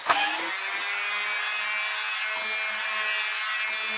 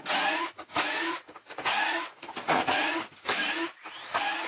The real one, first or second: first